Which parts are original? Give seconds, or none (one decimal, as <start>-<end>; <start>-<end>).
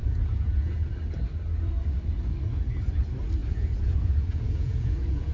0.9-3.4